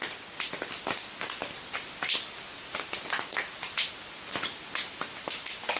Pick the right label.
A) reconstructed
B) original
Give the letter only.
B